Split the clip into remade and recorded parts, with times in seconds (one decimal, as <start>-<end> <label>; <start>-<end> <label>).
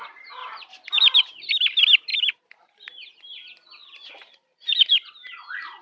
0.0-0.4 recorded; 0.4-1.2 remade; 1.2-2.1 recorded; 2.1-5.8 remade